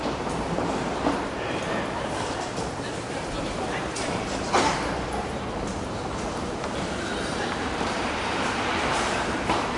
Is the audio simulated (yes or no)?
yes